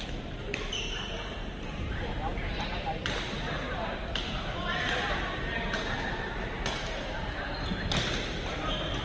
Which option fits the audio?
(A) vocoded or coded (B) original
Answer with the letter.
A